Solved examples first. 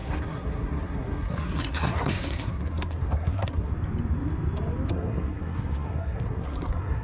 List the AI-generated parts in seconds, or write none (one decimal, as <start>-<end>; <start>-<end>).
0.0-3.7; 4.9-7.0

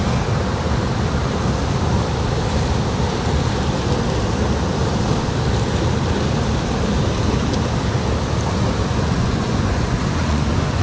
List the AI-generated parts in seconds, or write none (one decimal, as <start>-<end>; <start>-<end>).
8.8-10.8

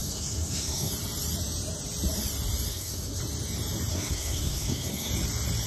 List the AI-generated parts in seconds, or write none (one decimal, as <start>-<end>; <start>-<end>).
0.0-0.9; 2.7-3.2; 3.9-5.1

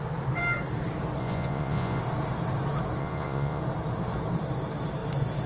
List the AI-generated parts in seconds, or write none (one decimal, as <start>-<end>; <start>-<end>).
1.2-2.0; 3.0-3.6

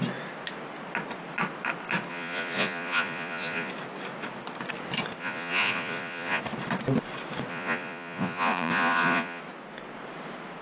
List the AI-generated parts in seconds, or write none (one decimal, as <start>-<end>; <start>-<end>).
2.1-3.7; 5.2-6.4; 7.5-9.4

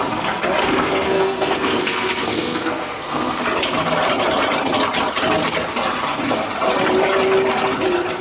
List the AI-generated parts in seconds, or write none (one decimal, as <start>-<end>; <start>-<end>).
0.6-3.4